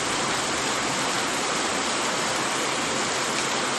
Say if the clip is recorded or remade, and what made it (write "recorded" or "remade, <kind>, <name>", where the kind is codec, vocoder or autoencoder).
recorded